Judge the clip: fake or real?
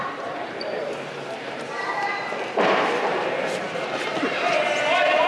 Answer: fake